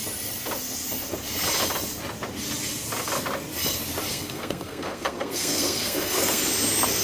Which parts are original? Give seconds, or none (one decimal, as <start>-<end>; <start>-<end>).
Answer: 0.0-4.1; 6.4-7.0